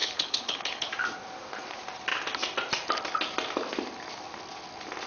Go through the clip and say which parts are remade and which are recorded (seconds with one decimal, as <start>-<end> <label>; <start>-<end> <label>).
0.0-0.9 remade; 0.9-5.1 recorded